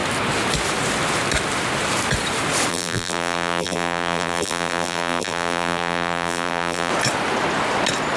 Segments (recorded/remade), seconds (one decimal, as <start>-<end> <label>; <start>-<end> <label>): 0.0-2.7 recorded; 2.7-6.9 remade; 6.9-8.2 recorded